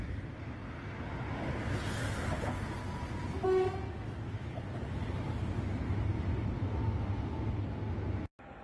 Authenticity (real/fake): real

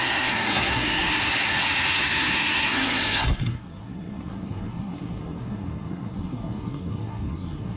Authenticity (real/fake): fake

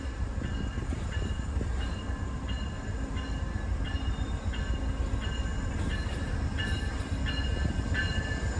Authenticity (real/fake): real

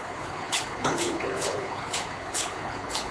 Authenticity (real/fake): fake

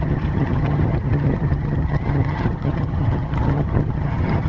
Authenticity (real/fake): fake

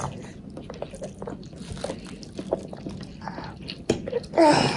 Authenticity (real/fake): real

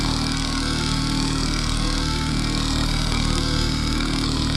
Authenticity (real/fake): fake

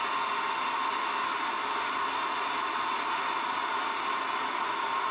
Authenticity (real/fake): real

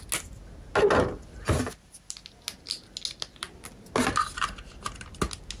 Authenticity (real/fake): real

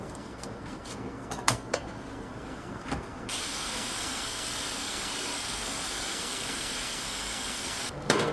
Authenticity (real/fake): fake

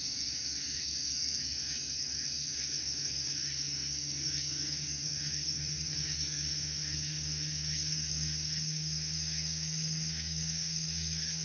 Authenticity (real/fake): fake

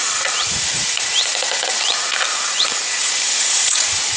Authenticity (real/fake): fake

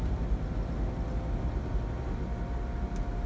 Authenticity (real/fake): real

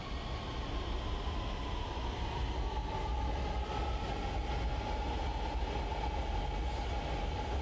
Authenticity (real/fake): real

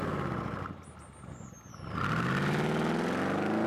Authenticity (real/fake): real